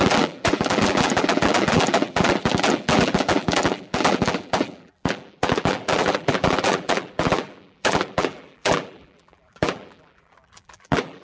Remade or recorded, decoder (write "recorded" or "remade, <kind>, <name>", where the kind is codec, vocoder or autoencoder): remade, vocoder, BigVGAN v2